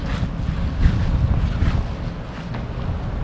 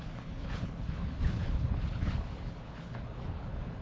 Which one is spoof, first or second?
second